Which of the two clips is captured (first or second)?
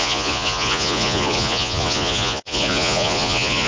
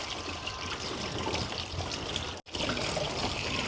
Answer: second